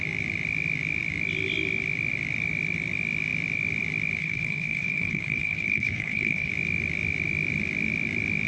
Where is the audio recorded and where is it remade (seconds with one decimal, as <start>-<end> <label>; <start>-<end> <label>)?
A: 0.0-4.2 recorded; 4.2-6.5 remade; 6.5-8.5 recorded